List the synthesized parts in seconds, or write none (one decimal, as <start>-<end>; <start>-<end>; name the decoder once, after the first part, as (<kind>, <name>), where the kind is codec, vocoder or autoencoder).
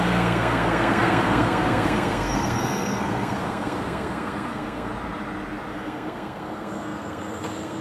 0.0-4.9 (codec, SNAC); 5.7-7.8